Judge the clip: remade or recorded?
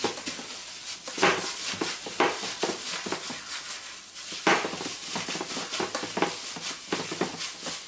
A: recorded